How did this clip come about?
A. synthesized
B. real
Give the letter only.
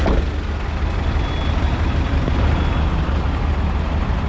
B